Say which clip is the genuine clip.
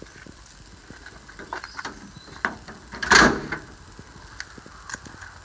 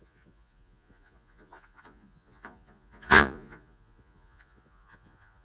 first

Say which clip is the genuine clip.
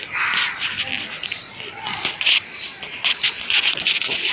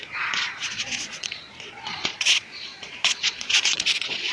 first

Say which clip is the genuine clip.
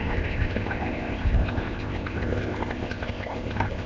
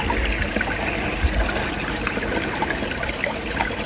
second